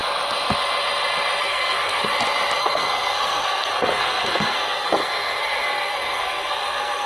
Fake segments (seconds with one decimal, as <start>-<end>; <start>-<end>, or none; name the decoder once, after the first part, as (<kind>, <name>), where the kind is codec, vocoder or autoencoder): 1.4-2.1 (codec, SNAC); 2.6-7.1